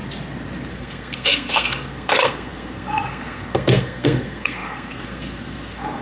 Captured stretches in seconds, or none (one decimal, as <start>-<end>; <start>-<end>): 0.0-0.7